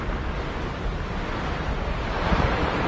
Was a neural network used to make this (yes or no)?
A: no